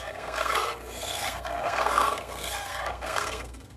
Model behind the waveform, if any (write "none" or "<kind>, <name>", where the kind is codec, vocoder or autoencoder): codec, SNAC